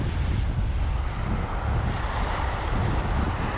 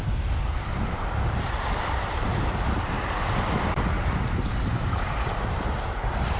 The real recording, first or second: first